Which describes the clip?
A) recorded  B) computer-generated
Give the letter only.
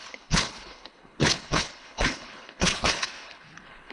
B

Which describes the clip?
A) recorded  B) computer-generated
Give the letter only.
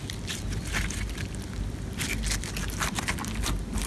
A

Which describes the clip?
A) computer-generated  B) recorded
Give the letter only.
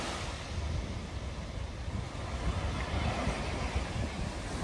B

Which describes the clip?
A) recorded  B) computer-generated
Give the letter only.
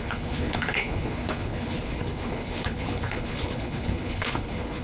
B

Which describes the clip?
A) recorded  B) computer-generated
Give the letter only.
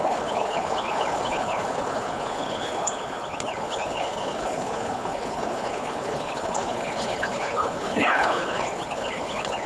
B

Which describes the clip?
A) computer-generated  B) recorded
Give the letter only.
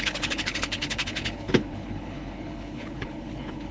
A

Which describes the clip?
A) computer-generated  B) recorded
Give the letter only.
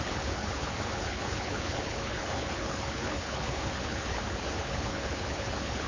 A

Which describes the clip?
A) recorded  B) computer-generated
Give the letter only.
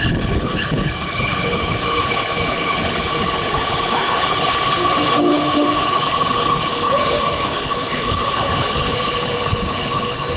B